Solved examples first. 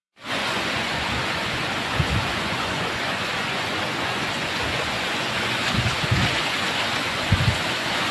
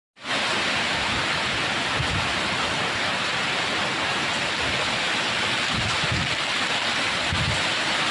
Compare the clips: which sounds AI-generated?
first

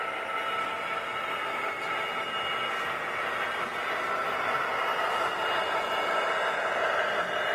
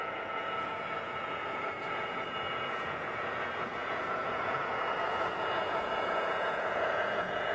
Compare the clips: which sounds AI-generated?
second